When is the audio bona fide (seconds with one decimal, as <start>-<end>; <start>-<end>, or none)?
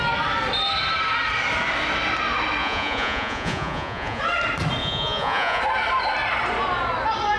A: 0.0-2.6; 4.2-4.8; 5.6-7.4